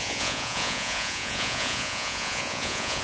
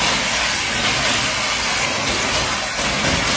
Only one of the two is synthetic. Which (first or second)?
first